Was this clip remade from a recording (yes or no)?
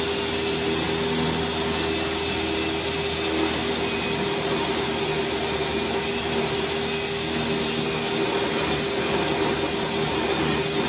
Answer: no